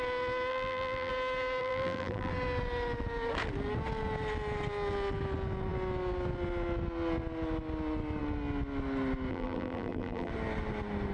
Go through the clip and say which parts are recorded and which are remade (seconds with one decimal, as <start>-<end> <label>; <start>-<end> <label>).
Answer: 0.0-0.5 recorded; 0.5-1.1 remade; 1.1-1.6 recorded; 1.6-2.3 remade; 2.3-9.3 recorded; 9.3-10.3 remade; 10.3-11.1 recorded